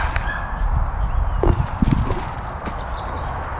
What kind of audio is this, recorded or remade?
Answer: recorded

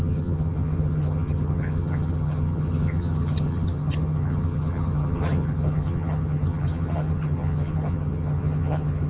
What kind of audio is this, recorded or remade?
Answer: remade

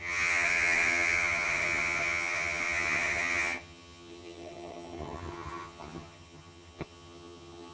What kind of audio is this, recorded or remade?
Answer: remade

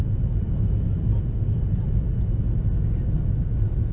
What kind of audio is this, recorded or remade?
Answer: recorded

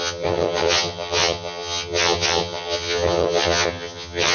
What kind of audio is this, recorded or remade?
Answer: remade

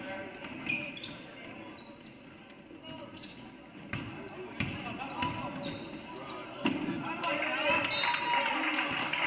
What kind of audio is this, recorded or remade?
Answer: recorded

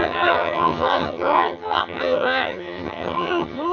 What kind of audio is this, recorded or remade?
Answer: remade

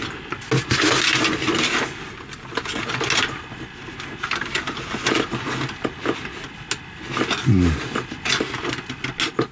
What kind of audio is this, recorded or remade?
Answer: recorded